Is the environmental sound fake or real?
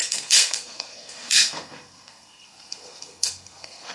fake